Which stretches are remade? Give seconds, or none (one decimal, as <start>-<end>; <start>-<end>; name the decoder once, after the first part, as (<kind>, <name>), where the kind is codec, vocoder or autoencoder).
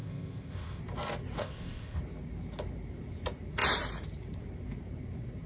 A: 0.0-0.8 (codec, ZipCodec); 1.4-2.0